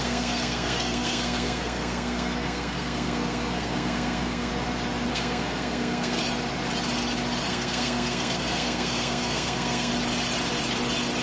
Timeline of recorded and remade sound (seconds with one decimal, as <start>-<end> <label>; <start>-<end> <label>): 0.0-4.5 remade; 4.5-5.1 recorded; 5.1-6.2 remade; 6.2-7.5 recorded; 7.5-9.9 remade; 9.9-11.2 recorded